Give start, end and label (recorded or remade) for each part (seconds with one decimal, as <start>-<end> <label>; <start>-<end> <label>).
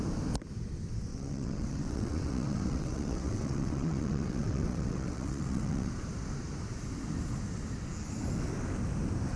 0.0-1.1 recorded; 1.1-5.9 remade; 5.9-9.4 recorded